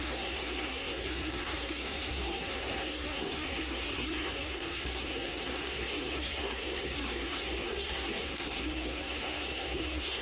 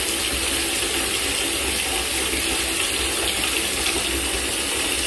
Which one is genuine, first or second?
second